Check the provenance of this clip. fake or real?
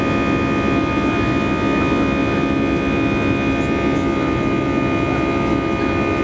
real